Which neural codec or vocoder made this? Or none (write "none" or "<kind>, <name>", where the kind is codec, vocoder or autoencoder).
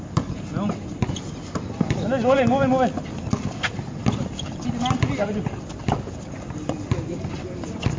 none